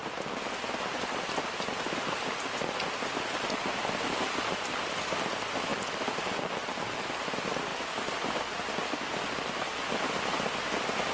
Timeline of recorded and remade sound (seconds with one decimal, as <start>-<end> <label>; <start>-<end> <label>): 0.0-11.1 recorded